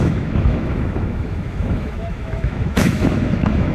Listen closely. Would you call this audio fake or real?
fake